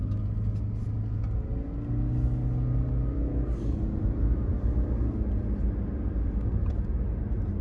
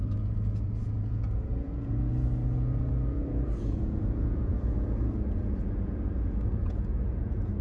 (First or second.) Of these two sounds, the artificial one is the second